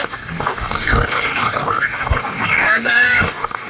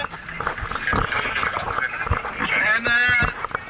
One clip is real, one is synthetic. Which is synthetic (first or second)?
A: first